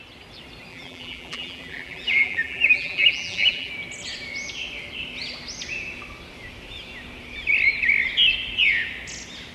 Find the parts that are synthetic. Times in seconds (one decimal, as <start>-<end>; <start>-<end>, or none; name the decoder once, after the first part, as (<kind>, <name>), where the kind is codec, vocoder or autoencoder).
0.7-3.7 (vocoder, BigVGAN v2)